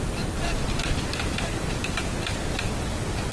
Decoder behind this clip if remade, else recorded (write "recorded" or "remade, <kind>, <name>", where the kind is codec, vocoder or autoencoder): remade, vocoder, BigVGAN v2